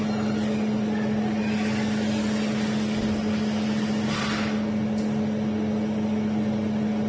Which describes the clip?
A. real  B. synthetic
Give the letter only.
A